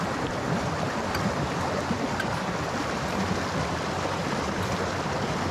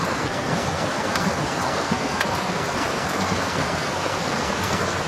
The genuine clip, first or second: first